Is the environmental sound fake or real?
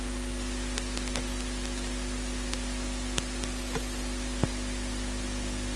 real